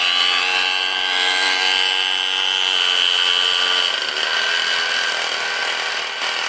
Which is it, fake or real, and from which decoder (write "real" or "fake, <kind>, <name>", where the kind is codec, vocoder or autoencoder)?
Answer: real